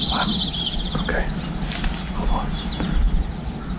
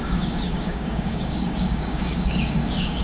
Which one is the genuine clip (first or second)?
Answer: first